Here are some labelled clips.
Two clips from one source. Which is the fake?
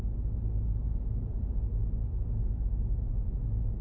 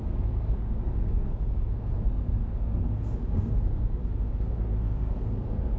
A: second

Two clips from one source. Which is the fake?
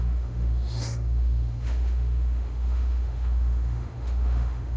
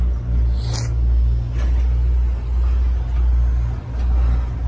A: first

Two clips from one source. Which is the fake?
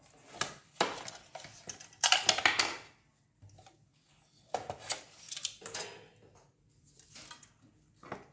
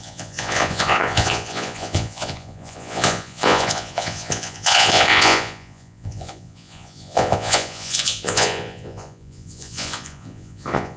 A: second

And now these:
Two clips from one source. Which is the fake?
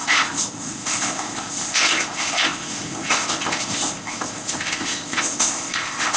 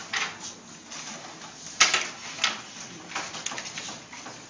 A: first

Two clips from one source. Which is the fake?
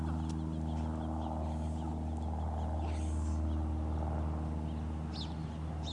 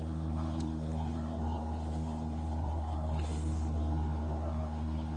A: second